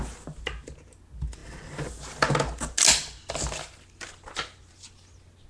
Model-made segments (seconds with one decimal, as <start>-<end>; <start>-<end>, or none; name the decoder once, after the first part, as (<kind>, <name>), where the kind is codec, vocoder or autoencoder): none